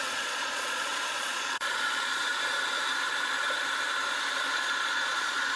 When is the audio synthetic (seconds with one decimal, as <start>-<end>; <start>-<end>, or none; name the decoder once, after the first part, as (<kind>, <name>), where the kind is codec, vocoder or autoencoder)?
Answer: 0.0-2.3 (vocoder, Vocos); 4.5-5.6